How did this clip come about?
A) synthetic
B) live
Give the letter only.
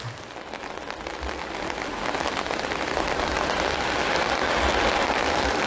B